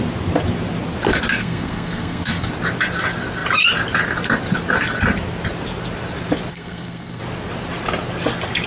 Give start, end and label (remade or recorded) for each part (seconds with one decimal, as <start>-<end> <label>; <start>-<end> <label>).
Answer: 0.0-1.4 recorded; 1.4-2.5 remade; 2.5-6.5 recorded; 6.5-7.2 remade; 7.2-8.7 recorded